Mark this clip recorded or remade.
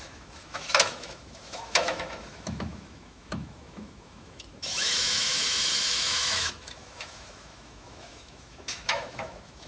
remade